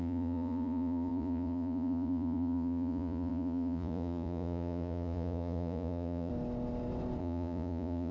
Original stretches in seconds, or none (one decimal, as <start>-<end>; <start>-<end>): 6.3-7.2